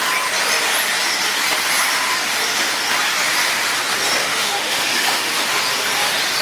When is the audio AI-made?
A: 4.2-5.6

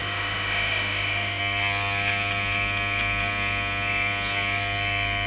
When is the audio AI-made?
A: 0.0-1.4

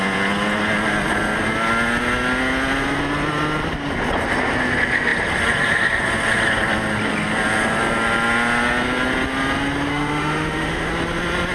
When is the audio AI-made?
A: 9.9-10.9

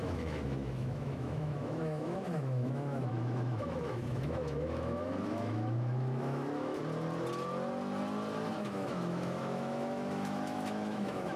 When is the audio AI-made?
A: 0.0-6.8; 8.5-11.4

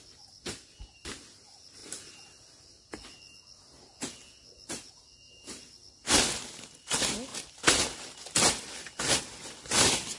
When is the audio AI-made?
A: none

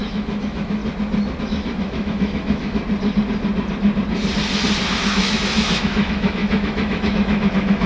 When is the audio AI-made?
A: 0.0-0.8; 1.4-2.8; 4.9-7.9

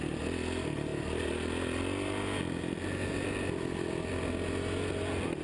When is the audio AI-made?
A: none

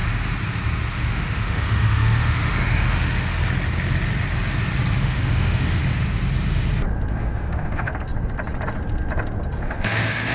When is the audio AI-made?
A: 0.9-3.3; 5.0-5.8; 7.1-7.9; 9.6-10.3